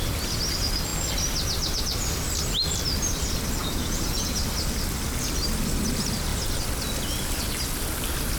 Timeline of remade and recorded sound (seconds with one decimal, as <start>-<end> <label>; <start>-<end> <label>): 0.0-3.6 recorded; 3.6-4.4 remade; 4.4-8.4 recorded